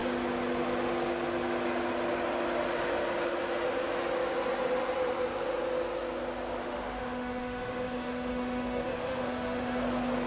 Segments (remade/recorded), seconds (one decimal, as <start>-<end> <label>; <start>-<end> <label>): 0.0-6.6 recorded; 6.6-9.8 remade; 9.8-10.3 recorded